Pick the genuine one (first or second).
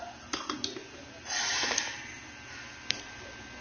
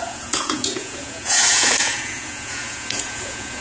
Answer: first